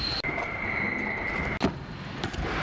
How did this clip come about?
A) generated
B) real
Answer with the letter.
B